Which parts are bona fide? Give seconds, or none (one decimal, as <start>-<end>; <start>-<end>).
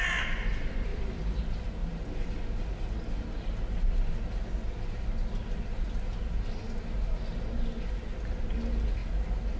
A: 0.0-0.9; 1.4-8.1; 8.6-9.6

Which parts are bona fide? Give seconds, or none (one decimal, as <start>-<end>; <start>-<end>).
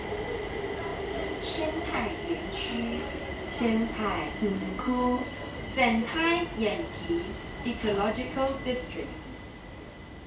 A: 0.0-2.7; 3.2-4.5; 5.7-10.3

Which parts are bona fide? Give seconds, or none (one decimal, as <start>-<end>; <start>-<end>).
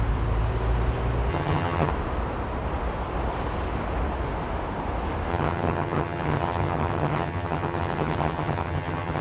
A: 0.0-1.3; 1.9-5.3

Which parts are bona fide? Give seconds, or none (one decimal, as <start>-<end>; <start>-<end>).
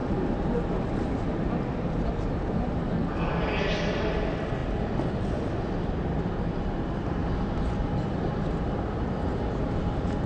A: 0.0-10.3